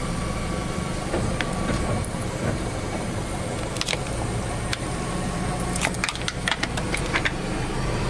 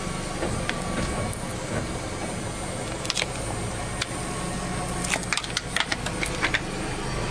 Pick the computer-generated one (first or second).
first